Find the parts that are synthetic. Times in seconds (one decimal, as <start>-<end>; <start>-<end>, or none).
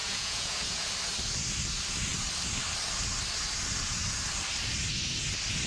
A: 0.0-0.9